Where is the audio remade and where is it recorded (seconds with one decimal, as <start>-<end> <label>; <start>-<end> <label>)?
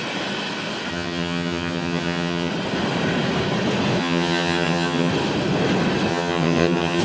0.0-0.9 recorded; 0.9-2.5 remade; 2.5-4.0 recorded; 4.0-5.1 remade; 5.1-6.1 recorded; 6.1-7.0 remade